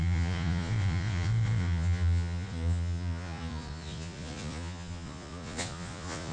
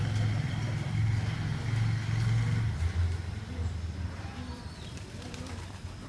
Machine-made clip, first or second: first